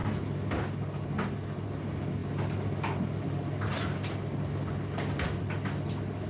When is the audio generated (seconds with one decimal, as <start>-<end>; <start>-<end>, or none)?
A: none